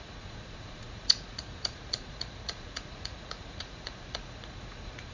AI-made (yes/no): yes